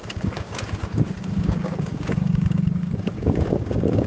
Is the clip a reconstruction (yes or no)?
yes